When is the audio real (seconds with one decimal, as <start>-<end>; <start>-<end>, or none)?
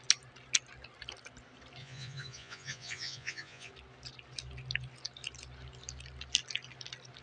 0.0-1.8; 3.7-7.2